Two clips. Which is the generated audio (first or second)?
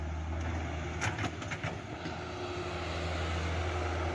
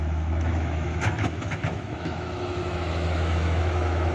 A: second